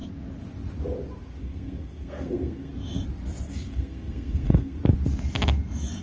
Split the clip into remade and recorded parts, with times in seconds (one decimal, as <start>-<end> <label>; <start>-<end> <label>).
0.0-1.4 recorded; 1.4-2.7 remade; 2.7-3.5 recorded; 3.5-4.8 remade; 4.8-6.0 recorded